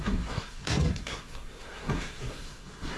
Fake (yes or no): yes